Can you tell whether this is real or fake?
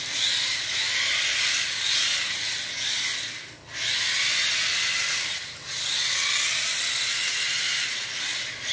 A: real